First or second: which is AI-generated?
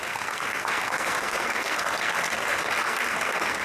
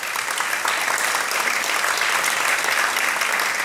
first